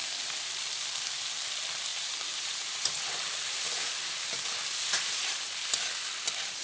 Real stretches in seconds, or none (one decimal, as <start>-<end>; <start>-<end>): 0.6-1.9; 5.8-6.6